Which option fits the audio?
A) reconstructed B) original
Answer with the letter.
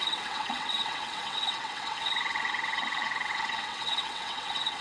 A